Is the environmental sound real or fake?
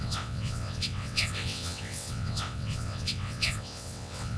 fake